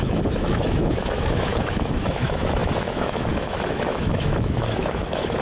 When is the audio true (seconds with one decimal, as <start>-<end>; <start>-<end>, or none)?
none